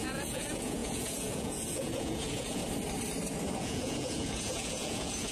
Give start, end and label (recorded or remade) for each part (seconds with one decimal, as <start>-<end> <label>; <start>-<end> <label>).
0.0-2.6 remade; 2.6-3.6 recorded; 3.6-5.3 remade